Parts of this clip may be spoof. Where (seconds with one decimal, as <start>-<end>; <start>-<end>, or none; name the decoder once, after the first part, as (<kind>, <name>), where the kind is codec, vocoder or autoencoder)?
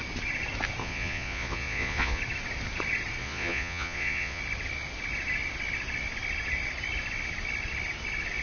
0.8-2.2 (vocoder, Vocos); 3.2-4.4